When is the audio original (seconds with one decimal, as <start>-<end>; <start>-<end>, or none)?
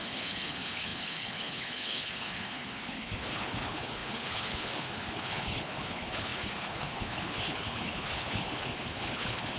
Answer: none